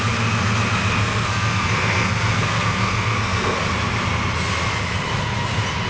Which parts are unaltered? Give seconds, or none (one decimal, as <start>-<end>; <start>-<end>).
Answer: 0.0-1.0; 3.6-5.9